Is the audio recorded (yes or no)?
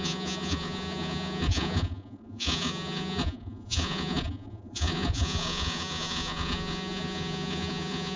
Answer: no